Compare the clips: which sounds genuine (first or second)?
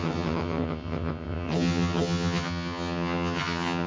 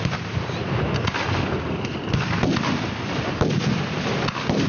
second